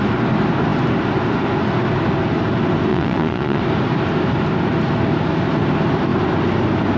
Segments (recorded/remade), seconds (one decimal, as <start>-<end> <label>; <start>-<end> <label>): 0.0-2.9 recorded; 2.9-3.6 remade; 3.6-7.0 recorded